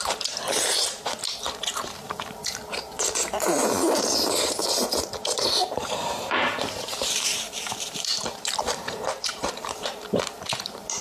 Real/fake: fake